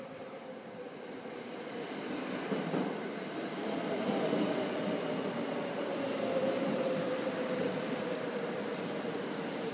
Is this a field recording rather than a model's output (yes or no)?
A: no